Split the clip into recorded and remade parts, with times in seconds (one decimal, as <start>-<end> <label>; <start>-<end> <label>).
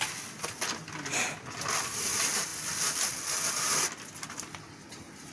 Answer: 0.0-5.3 recorded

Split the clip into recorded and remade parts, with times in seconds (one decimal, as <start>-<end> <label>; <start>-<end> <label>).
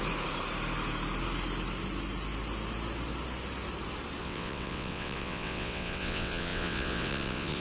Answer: 0.0-4.2 recorded; 4.2-7.6 remade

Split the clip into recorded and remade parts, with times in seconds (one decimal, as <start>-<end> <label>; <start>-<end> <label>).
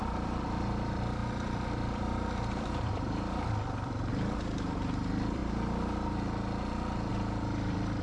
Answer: 0.0-5.4 remade; 5.4-7.1 recorded; 7.1-8.0 remade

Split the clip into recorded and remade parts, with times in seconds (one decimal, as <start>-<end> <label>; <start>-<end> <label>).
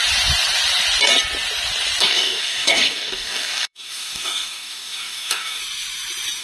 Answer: 0.0-2.0 recorded; 2.0-5.6 remade; 5.6-6.4 recorded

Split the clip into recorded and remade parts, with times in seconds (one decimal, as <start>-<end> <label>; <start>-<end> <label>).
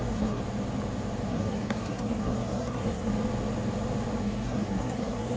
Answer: 0.0-0.4 remade; 0.4-1.3 recorded; 1.3-3.1 remade; 3.1-4.2 recorded; 4.2-5.4 remade